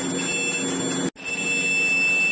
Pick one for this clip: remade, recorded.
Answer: recorded